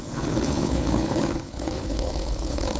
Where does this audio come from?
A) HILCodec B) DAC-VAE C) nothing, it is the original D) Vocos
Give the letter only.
A